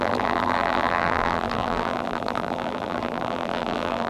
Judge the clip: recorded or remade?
remade